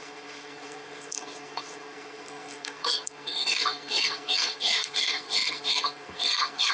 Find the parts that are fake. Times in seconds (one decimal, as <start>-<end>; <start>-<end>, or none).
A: 0.0-6.7

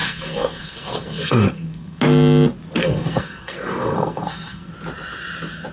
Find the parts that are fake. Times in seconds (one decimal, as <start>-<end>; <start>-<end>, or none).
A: 0.0-2.0; 2.8-4.7

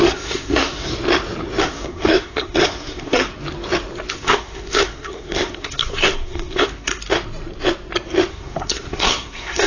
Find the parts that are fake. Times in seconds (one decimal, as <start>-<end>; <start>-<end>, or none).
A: 0.0-0.9; 1.6-3.3; 4.1-6.9; 8.3-9.7

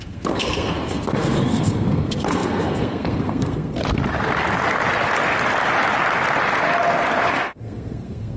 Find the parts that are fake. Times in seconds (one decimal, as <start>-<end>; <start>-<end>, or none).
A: 0.0-3.8; 7.3-8.4

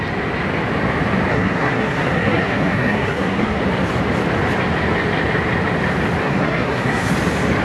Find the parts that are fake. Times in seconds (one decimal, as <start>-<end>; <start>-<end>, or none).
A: 1.3-3.6; 6.2-7.1

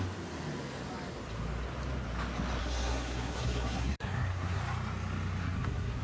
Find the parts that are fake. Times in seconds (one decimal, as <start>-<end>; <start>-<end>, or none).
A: 2.6-4.6; 5.4-6.0